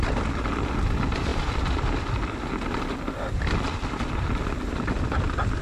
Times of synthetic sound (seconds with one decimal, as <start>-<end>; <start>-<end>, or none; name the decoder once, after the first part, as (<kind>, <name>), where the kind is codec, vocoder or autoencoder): 1.3-4.3 (vocoder, BigVGAN v2)